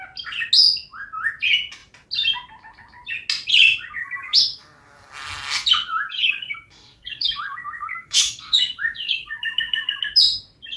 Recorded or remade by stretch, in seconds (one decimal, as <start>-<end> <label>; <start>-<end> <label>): 0.0-4.0 recorded; 4.0-5.1 remade; 5.1-5.9 recorded; 5.9-10.0 remade; 10.0-10.8 recorded